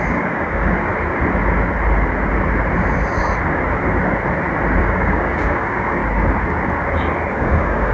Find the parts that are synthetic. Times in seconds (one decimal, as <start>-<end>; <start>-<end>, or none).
0.0-0.9; 4.8-6.0; 7.3-7.9